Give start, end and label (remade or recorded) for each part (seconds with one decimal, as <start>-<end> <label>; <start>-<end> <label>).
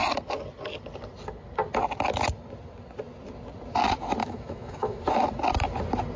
0.0-4.2 recorded; 4.2-5.0 remade; 5.0-6.2 recorded